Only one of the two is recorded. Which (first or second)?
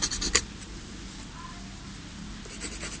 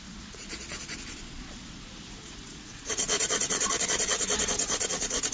first